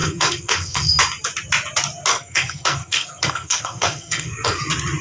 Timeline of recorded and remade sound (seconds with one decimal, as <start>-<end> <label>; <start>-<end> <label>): 0.0-1.0 remade; 1.0-2.1 recorded; 2.1-4.6 remade; 4.6-5.0 recorded